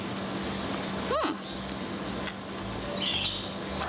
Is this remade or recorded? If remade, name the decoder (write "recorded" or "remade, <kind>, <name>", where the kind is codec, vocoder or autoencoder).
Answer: recorded